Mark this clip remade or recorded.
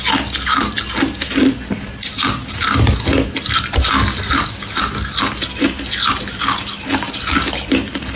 recorded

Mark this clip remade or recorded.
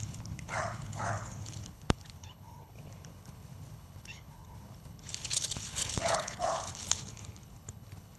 remade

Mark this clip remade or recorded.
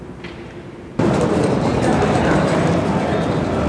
remade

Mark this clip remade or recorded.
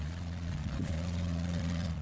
remade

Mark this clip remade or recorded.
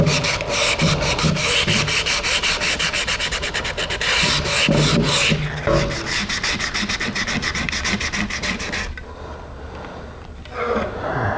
recorded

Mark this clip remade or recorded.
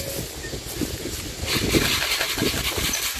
recorded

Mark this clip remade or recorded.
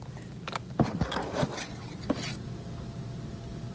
recorded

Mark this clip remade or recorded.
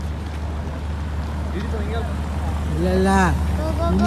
recorded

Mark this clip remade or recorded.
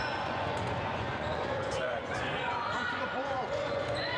remade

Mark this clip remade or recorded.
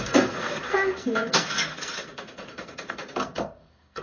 remade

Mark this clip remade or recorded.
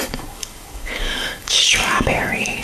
remade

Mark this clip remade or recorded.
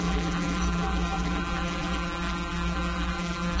remade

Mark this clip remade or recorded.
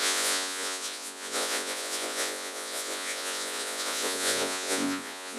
remade